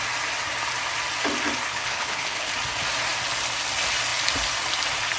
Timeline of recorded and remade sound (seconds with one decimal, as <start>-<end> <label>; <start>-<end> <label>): 0.0-1.7 recorded; 1.7-2.5 remade; 2.5-5.2 recorded